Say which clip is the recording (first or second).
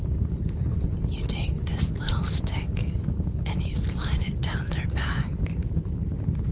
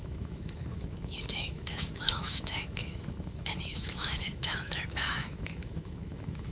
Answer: first